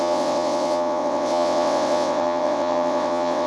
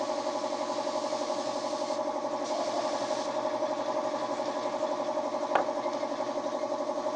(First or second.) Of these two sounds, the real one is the second